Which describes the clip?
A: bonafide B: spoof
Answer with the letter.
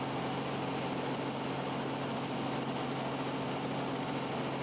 A